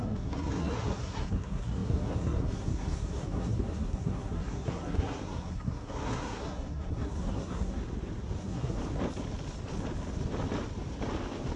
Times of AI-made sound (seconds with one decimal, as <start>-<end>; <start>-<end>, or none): 0.0-7.8; 8.4-8.8